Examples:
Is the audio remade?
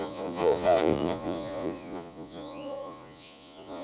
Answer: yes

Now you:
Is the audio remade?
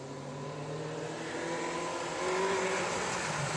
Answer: no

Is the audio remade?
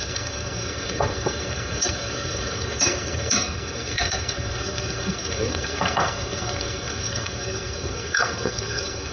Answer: yes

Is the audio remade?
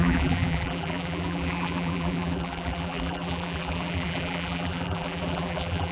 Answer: yes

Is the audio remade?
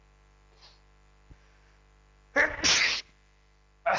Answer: no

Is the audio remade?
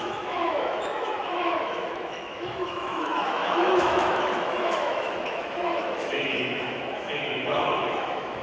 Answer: yes